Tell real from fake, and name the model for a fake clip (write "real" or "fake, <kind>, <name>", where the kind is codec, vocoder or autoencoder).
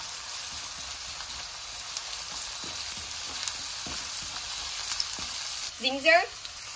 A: real